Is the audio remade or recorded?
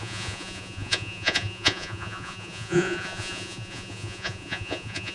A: remade